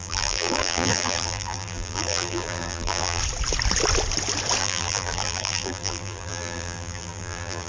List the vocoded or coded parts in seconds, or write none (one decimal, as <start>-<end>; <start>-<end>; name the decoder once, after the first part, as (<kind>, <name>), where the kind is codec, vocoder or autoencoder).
0.0-3.2 (vocoder, BigVGAN v2); 4.6-7.7